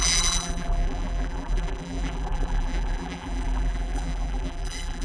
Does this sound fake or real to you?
fake